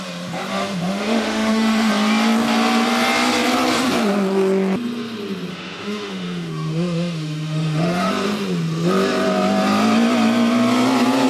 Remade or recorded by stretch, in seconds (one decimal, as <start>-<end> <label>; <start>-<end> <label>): 0.0-0.5 recorded; 0.5-1.9 remade; 1.9-5.5 recorded; 5.5-8.1 remade; 8.1-11.3 recorded

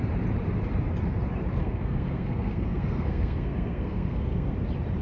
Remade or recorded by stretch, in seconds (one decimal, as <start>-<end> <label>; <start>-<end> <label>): 0.0-1.6 recorded; 1.6-4.6 remade; 4.6-5.0 recorded

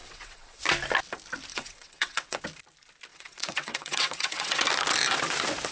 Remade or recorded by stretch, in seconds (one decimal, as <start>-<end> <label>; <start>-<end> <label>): 0.0-0.6 remade; 0.6-1.5 recorded; 1.5-2.4 remade; 2.4-3.1 recorded; 3.1-4.6 remade; 4.6-5.7 recorded

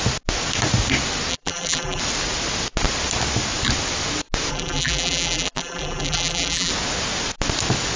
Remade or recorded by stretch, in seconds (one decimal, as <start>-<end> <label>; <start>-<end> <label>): 0.0-1.3 recorded; 1.3-2.0 remade; 2.0-4.5 recorded; 4.5-6.7 remade; 6.7-8.0 recorded

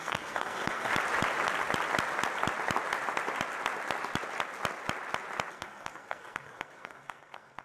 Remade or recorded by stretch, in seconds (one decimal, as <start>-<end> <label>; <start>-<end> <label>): 0.0-0.9 remade; 0.9-5.5 recorded; 5.5-7.6 remade

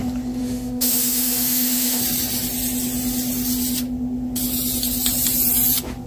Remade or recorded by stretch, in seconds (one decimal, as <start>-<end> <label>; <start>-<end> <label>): 0.0-0.4 recorded; 0.4-2.0 remade; 2.0-6.1 recorded